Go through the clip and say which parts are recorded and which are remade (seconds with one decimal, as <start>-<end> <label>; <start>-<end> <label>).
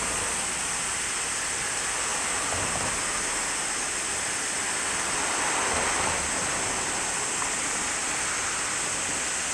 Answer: 0.0-9.5 recorded